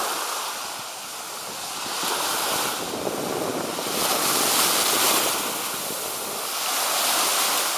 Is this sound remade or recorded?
recorded